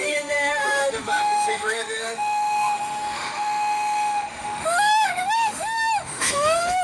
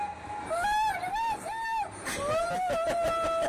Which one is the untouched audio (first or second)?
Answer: second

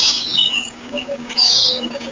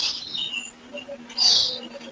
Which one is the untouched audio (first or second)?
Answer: second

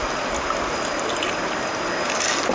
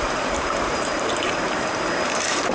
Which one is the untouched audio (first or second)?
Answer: first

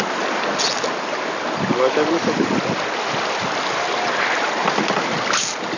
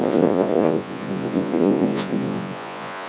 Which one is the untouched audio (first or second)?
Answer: first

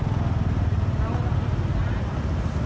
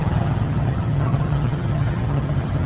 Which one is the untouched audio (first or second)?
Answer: first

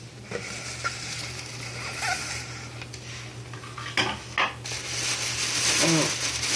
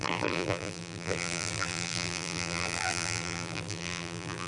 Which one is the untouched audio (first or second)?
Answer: first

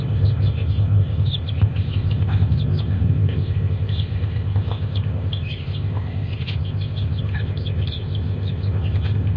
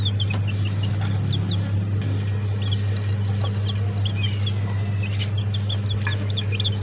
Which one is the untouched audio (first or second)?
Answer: second